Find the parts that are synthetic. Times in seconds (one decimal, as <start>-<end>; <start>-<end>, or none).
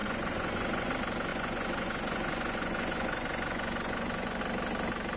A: 0.0-0.9; 1.3-4.4